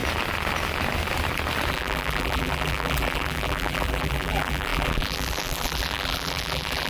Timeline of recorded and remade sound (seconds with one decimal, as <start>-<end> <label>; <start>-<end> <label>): 0.0-1.7 recorded; 1.7-6.9 remade

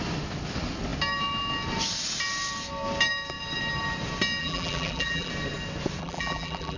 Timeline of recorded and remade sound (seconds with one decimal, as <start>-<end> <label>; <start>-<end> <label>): 0.0-4.4 recorded; 4.4-5.3 remade; 5.3-6.0 recorded; 6.0-6.8 remade

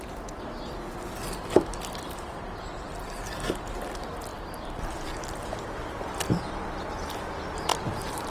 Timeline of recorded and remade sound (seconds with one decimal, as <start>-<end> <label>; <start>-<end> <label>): 0.0-4.3 recorded; 4.3-5.1 remade; 5.1-7.7 recorded; 7.7-8.3 remade

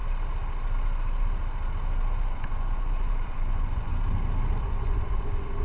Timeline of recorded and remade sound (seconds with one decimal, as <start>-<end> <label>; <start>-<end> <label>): 0.0-2.3 recorded; 2.3-3.9 remade; 3.9-4.6 recorded; 4.6-5.6 remade